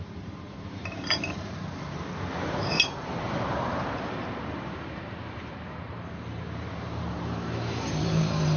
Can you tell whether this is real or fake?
fake